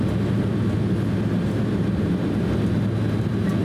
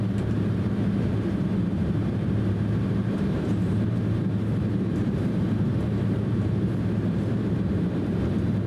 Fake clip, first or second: second